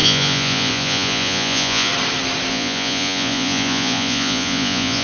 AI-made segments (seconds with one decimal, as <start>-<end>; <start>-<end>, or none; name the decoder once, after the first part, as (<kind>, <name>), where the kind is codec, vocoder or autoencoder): 0.0-1.9 (vocoder, Vocos); 2.5-5.0